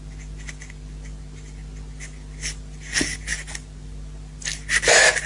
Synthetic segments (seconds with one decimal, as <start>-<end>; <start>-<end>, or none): none

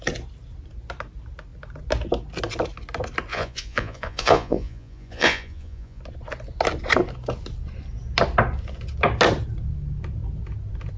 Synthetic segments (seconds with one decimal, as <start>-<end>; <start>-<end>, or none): 3.3-6.0

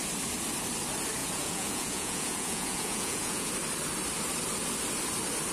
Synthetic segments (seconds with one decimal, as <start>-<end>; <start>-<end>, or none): 1.2-3.5

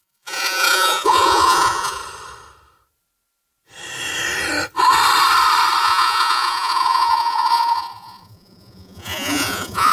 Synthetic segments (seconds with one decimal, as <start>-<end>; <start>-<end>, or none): 0.0-2.0; 5.8-9.9

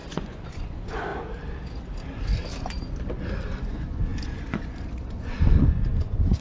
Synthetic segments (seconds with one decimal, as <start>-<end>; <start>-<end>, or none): 0.0-1.1; 3.6-6.4